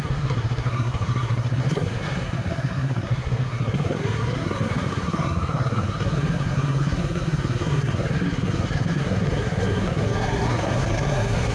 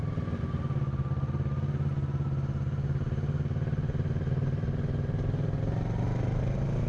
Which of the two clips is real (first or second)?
second